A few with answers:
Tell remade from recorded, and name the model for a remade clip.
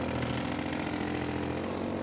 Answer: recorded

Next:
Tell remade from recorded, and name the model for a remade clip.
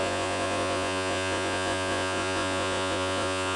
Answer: remade, vocoder, Vocos